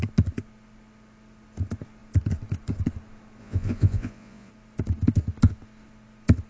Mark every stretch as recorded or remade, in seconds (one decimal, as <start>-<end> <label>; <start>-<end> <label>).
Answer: 0.0-3.4 recorded; 3.4-4.5 remade; 4.5-6.5 recorded